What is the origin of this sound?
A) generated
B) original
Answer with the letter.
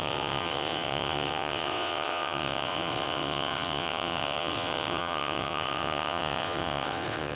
A